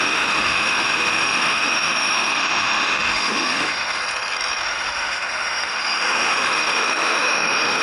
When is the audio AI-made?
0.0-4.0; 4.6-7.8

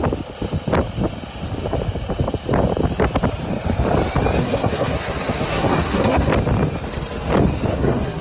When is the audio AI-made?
4.4-6.3; 7.7-8.2

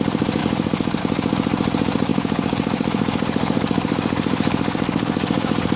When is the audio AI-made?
0.4-1.0; 2.1-5.8

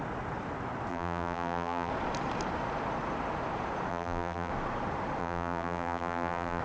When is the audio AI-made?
0.9-1.9; 3.9-4.5; 5.2-6.6

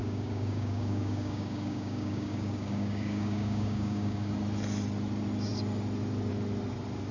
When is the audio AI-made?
0.0-4.3

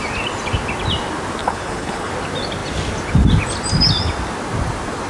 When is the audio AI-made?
1.4-2.1